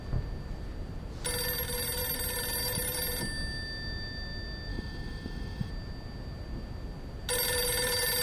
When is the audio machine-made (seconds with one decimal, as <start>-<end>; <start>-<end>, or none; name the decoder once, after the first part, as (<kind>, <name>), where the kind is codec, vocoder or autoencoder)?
4.7-5.7 (autoencoder, DAC-VAE)